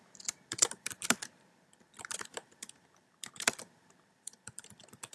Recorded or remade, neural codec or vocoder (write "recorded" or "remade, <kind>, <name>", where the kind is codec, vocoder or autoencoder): remade, vocoder, BigVGAN v2